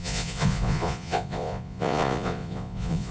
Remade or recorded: remade